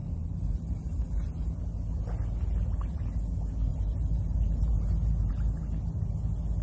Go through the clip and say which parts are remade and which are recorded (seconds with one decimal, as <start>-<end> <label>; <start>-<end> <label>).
0.0-1.5 remade; 1.5-3.7 recorded; 3.7-5.3 remade; 5.3-6.6 recorded